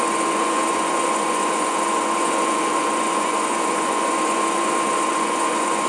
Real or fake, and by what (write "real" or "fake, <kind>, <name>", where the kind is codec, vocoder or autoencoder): fake, vocoder, Vocos